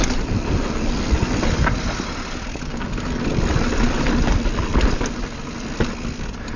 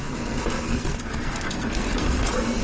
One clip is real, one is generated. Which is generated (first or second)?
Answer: second